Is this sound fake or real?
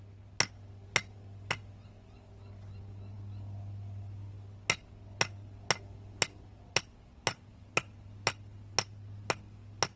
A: real